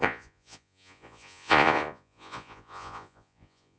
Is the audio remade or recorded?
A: remade